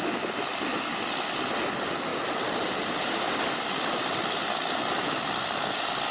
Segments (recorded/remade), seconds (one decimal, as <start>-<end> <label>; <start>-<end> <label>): 0.0-6.1 recorded